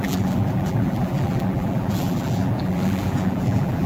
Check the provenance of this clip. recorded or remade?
remade